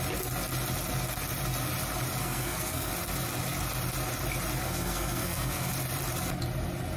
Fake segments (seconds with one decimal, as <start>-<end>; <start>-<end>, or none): 2.2-2.9; 4.6-5.7